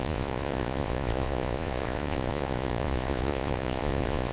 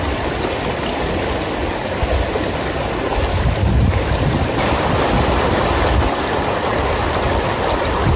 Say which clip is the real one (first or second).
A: second